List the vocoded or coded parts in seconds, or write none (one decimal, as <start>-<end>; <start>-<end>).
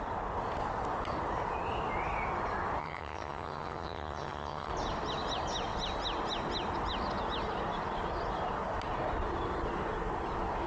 2.8-4.7